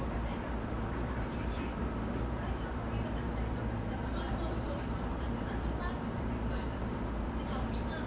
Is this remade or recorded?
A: remade